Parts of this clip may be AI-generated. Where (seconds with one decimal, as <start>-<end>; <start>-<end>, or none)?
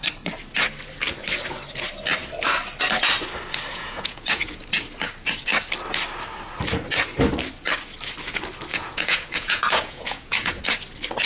3.7-4.6; 8.7-10.6